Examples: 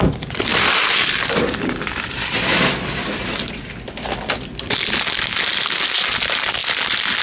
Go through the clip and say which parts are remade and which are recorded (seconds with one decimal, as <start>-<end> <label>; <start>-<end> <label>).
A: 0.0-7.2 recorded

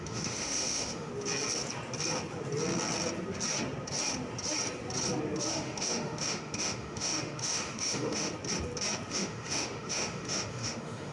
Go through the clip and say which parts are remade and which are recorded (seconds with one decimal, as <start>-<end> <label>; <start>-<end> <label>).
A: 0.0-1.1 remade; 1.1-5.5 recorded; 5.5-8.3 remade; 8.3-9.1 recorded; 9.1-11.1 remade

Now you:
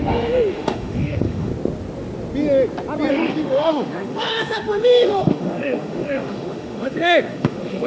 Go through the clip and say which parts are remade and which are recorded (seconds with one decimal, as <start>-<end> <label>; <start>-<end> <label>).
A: 0.0-1.5 remade; 1.5-3.1 recorded; 3.1-7.9 remade

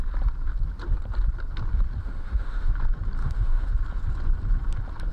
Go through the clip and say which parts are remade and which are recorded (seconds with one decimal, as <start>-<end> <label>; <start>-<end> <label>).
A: 0.0-2.0 recorded; 2.0-2.7 remade; 2.7-3.2 recorded; 3.2-3.7 remade; 3.7-5.1 recorded

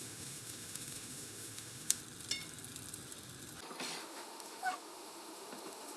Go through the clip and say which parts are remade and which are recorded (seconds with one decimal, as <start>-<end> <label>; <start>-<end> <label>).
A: 0.0-2.0 remade; 2.0-4.0 recorded; 4.0-6.0 remade

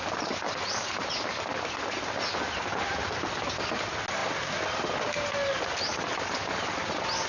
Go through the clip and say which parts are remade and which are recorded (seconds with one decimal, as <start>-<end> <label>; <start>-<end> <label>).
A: 0.0-7.3 recorded

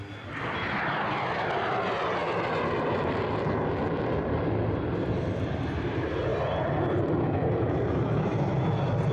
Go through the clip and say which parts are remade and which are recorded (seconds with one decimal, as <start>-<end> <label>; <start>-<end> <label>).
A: 0.0-9.1 recorded

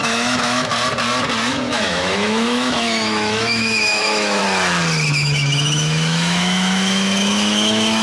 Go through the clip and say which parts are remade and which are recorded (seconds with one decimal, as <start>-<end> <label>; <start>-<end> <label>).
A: 0.0-0.7 remade; 0.7-1.5 recorded; 1.5-4.4 remade; 4.4-5.1 recorded; 5.1-8.0 remade